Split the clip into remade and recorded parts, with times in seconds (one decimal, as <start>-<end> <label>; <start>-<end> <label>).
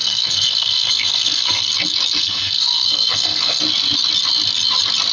0.0-1.7 remade; 1.7-2.2 recorded; 2.2-3.6 remade; 3.6-5.1 recorded